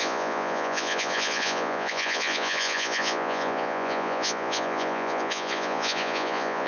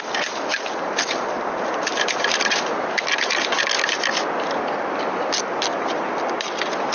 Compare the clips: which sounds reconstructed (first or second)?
first